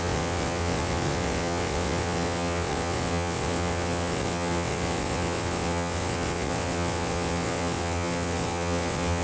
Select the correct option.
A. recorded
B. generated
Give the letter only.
B